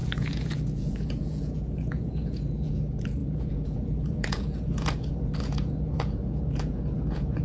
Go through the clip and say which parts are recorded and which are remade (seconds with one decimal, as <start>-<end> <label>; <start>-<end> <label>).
0.0-7.4 remade